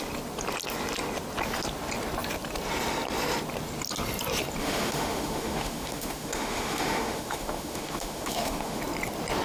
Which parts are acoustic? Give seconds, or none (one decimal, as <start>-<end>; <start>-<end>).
0.0-4.6; 8.8-9.4